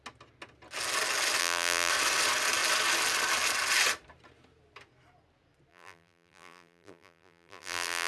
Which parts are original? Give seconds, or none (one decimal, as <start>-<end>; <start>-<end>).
0.0-1.4; 1.9-5.7